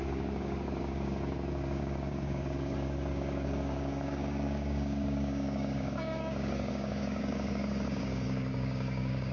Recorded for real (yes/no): no